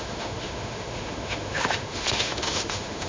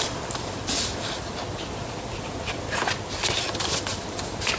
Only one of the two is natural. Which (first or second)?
second